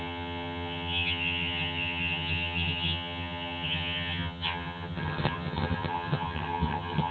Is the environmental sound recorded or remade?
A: remade